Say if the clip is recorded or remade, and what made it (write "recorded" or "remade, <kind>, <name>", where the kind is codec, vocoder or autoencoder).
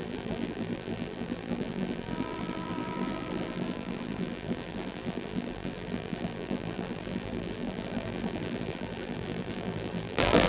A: remade, vocoder, BigVGAN v2